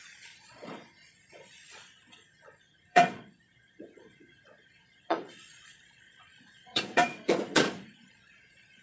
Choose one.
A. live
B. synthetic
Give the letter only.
B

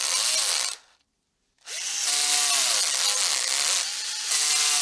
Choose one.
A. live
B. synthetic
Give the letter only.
A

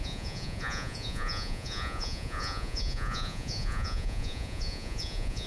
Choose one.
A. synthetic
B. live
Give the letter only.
A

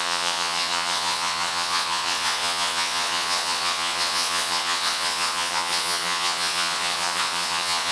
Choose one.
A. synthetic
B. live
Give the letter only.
A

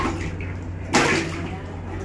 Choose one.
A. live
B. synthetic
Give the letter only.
A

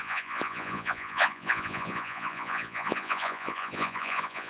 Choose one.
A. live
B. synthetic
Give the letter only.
B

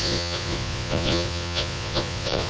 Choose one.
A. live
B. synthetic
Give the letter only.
B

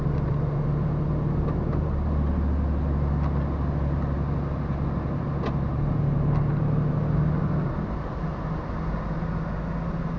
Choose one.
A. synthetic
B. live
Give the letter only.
B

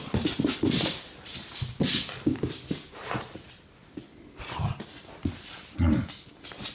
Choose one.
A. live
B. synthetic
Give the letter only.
A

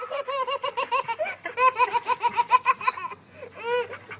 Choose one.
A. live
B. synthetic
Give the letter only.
A